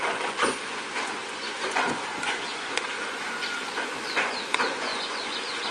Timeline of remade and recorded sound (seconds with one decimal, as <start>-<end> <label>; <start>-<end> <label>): 0.0-5.7 remade